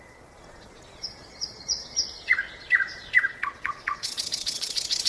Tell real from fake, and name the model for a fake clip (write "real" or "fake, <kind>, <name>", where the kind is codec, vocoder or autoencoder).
fake, vocoder, Vocos